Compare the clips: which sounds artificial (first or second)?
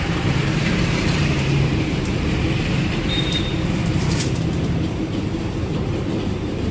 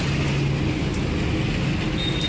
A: first